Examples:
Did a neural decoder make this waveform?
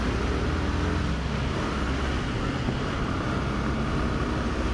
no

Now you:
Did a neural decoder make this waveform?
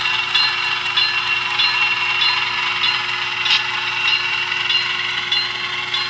no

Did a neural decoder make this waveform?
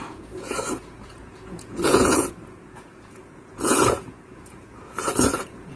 yes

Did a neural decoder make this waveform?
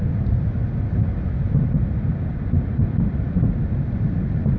no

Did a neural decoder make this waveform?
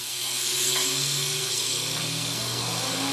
yes